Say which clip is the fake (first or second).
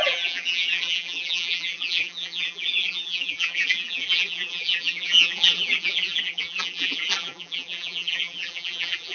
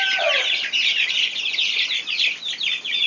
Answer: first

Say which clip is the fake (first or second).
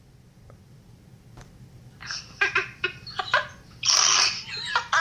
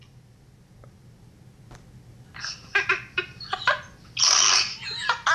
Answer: first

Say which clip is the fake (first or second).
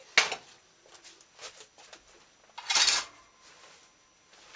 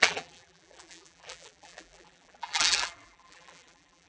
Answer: second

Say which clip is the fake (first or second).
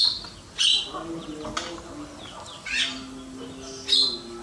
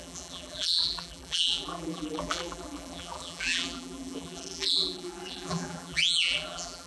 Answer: second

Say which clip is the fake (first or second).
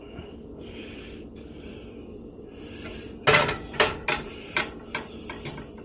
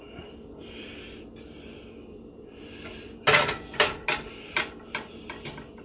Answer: first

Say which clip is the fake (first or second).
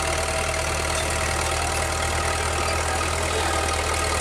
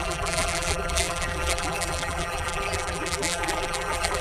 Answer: second